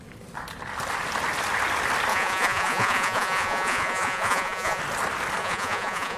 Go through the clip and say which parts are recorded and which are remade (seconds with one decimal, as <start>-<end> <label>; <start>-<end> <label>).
0.0-2.1 recorded; 2.1-4.8 remade; 4.8-5.4 recorded; 5.4-6.2 remade